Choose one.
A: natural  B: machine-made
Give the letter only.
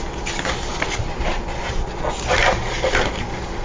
A